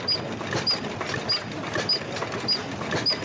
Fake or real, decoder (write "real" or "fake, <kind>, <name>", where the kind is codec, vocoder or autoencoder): real